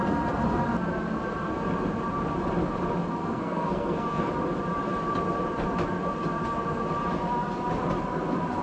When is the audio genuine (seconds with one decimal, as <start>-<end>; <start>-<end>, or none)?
0.0-3.2; 4.3-8.6